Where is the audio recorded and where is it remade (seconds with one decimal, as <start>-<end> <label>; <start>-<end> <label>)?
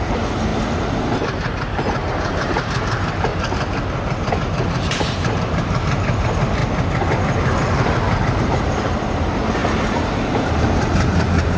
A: 0.0-3.3 remade; 3.3-4.3 recorded; 4.3-6.6 remade; 6.6-8.4 recorded; 8.4-11.6 remade